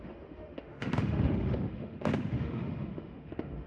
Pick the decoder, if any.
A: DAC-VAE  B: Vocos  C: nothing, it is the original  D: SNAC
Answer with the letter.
A